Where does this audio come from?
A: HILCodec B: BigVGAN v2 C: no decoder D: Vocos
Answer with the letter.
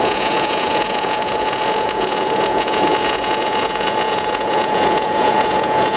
D